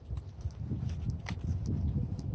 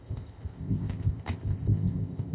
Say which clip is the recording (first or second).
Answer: first